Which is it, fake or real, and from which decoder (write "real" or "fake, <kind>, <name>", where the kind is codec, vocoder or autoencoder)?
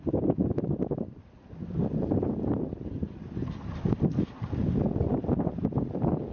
fake, vocoder, BigVGAN v2